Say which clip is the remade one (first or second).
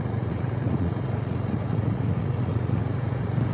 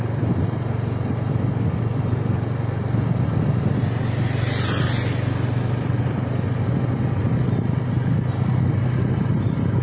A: first